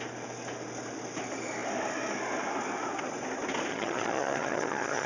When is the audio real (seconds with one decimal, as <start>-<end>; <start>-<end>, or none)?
0.0-3.7